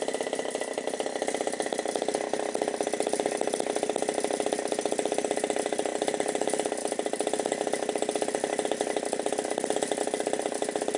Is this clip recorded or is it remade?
recorded